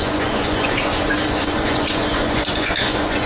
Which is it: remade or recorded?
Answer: remade